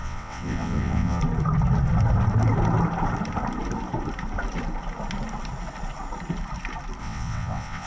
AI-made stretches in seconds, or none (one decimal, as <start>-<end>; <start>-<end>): 0.0-1.2; 7.0-7.9